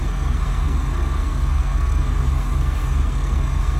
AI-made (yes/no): yes